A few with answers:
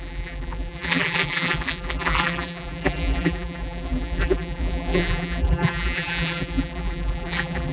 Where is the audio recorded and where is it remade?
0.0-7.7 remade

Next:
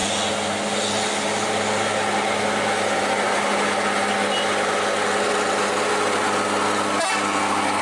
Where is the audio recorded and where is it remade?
0.0-7.8 recorded

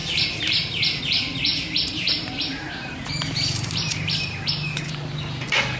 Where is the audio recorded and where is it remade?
0.0-1.0 remade; 1.0-1.5 recorded; 1.5-5.0 remade; 5.0-5.8 recorded